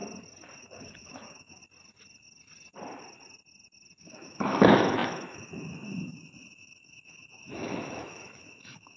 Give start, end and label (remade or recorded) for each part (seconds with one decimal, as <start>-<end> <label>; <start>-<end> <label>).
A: 0.0-0.6 recorded; 0.6-1.6 remade; 1.6-4.0 recorded; 4.0-9.0 remade